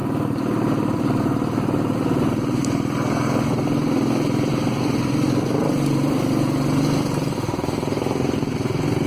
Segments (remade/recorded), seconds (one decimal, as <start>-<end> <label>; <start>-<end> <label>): 0.0-9.1 recorded